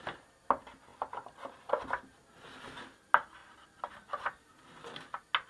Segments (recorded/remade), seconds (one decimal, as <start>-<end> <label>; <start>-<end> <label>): 0.0-0.9 recorded; 0.9-1.8 remade; 1.8-3.4 recorded; 3.4-5.0 remade; 5.0-5.5 recorded